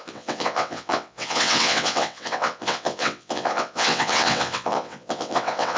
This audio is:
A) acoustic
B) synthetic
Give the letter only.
B